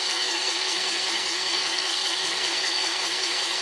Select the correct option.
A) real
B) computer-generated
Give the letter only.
B